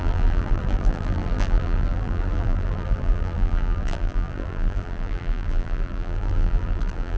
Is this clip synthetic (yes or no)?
yes